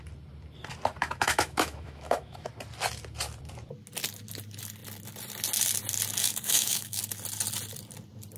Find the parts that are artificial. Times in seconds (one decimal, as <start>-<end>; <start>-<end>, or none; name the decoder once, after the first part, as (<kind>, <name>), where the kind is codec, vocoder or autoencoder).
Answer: 1.0-2.5 (autoencoder, DAC-VAE); 6.2-7.0